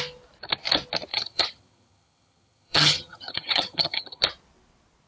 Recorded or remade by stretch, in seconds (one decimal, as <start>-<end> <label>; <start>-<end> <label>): 0.0-1.1 recorded; 1.1-4.2 remade; 4.2-5.1 recorded